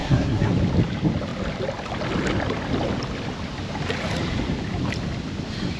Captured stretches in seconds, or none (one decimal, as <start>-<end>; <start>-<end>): 0.5-5.8